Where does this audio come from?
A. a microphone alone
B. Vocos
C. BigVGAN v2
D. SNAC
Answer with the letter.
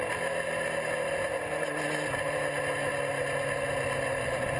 A